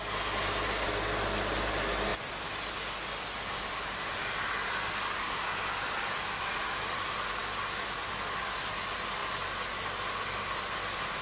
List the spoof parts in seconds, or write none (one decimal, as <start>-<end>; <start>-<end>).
none